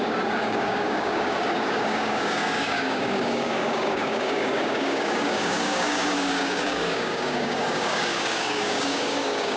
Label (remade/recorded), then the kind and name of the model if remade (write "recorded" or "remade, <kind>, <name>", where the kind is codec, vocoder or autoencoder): remade, codec, DAC